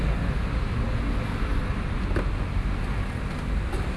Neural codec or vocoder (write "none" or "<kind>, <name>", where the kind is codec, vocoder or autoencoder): none